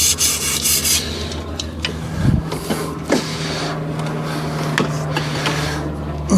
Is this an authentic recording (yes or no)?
yes